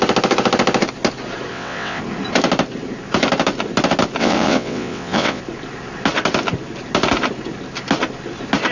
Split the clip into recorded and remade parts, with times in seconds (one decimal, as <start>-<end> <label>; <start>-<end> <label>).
0.0-1.5 recorded; 1.5-2.0 remade; 2.0-4.2 recorded; 4.2-5.4 remade; 5.4-8.7 recorded